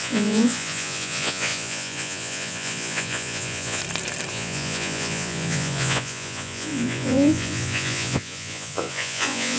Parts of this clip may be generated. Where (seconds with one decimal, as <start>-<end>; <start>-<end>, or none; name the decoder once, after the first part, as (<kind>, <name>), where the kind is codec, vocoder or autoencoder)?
0.0-3.8 (vocoder, Vocos); 4.3-9.6

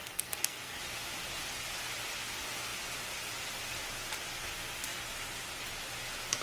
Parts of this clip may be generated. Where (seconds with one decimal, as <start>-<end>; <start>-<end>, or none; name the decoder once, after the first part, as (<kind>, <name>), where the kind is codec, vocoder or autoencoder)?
0.0-0.8 (codec, SNAC)

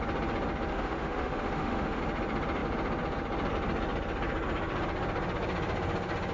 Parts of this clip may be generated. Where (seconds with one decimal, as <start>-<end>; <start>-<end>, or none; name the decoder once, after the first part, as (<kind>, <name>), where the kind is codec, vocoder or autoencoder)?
0.7-2.0 (autoencoder, DAC-VAE)

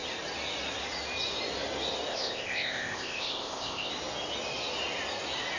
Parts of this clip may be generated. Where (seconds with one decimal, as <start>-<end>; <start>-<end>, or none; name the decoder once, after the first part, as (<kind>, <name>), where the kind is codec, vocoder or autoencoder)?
2.1-3.9 (codec, ZipCodec)

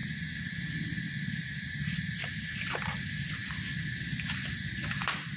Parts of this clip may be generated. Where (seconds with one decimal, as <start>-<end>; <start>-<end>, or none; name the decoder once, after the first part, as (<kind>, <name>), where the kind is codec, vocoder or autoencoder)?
none

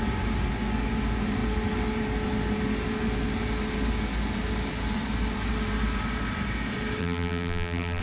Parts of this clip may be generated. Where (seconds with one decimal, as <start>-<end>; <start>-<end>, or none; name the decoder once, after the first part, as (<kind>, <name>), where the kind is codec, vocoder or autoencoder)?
7.0-8.0 (vocoder, BigVGAN v2)